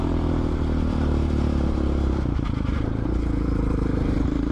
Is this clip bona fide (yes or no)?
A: no